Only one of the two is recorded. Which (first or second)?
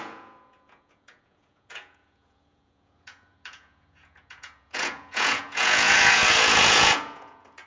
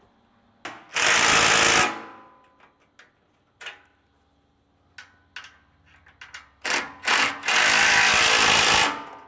second